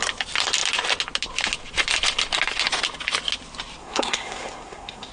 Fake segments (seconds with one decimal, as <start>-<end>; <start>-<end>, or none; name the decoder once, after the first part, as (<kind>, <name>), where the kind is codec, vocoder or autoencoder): 3.8-5.1 (codec, SNAC)